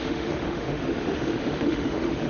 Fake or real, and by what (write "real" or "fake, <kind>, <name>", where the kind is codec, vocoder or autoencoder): fake, autoencoder, DAC-VAE